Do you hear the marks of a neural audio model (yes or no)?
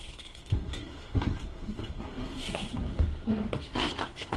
yes